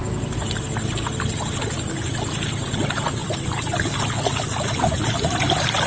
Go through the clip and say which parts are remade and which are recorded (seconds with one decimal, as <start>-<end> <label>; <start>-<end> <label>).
0.0-5.9 recorded